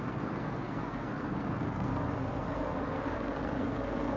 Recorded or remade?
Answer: remade